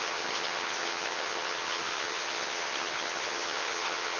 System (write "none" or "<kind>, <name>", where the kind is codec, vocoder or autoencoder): vocoder, HiFi-GAN